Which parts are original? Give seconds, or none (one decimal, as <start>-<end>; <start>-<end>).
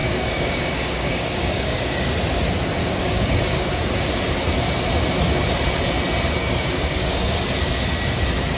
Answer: 2.1-2.8; 3.8-6.4; 7.3-8.6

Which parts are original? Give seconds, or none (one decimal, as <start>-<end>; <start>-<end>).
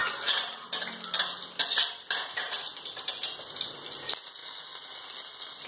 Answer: 0.0-5.7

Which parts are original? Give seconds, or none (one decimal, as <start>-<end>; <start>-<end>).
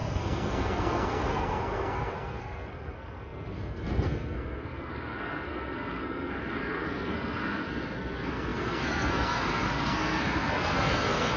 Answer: none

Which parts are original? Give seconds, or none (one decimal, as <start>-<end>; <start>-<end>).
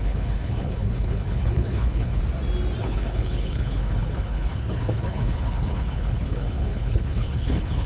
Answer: 2.2-2.8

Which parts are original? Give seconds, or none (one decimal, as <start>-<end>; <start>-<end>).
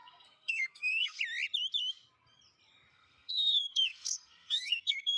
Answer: 1.2-2.9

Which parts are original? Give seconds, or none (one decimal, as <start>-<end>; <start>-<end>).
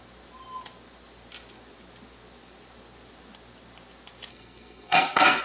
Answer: 0.0-4.3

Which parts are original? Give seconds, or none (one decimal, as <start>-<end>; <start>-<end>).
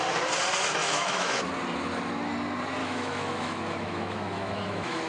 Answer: 0.0-0.8; 1.5-2.8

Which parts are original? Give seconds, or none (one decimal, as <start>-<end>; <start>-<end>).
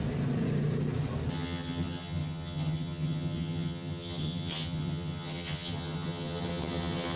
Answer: 0.0-1.3